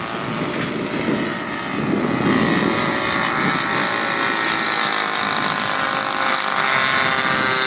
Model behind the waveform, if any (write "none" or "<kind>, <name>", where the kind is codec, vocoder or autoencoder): none